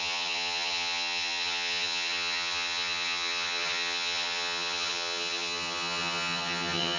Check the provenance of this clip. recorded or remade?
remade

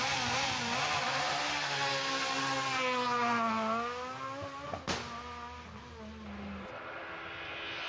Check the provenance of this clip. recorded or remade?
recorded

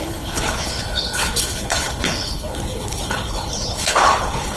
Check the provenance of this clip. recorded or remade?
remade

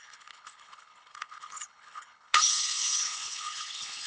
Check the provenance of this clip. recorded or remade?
remade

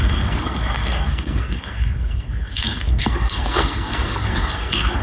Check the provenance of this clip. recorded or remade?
remade